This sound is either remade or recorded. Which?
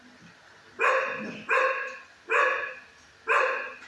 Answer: recorded